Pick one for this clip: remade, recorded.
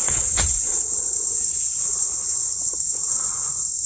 remade